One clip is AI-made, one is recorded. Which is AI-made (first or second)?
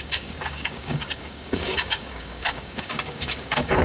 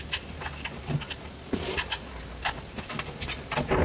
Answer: first